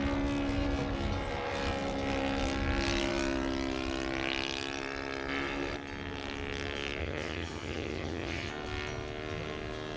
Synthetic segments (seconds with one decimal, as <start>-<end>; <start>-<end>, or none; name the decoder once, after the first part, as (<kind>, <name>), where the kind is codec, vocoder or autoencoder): 7.0-8.5 (vocoder, HiFi-GAN)